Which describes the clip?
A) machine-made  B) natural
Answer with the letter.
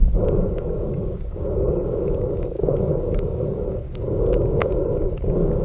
A